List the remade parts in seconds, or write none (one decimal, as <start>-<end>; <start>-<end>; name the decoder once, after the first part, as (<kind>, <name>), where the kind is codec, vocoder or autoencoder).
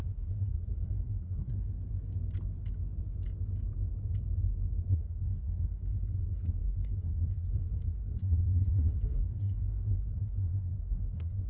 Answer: 0.0-1.7 (codec, SNAC); 4.9-11.5